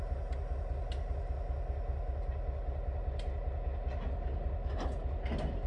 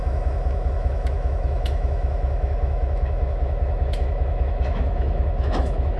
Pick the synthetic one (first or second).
second